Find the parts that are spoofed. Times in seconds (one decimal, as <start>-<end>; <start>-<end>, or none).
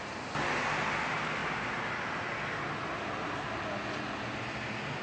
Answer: none